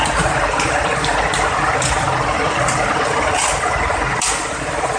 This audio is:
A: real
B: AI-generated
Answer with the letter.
A